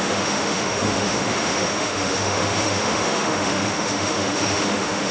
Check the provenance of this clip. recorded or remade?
remade